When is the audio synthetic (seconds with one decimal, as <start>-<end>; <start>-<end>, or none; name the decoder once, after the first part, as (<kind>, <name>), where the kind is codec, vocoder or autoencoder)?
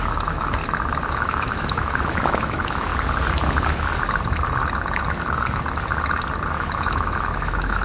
0.0-0.6 (autoencoder, DAC-VAE); 1.1-2.9; 6.5-7.8